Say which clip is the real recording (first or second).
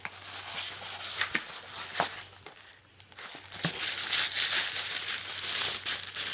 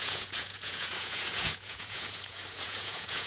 first